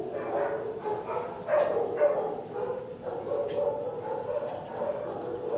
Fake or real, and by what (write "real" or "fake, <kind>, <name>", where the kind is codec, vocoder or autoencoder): real